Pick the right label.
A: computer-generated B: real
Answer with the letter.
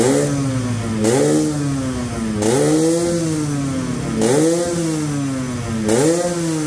B